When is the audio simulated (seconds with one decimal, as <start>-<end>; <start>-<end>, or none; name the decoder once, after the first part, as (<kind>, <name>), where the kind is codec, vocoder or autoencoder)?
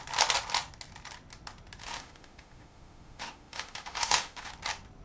1.8-4.5 (autoencoder, DAC-VAE)